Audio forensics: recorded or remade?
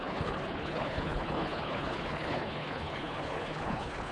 remade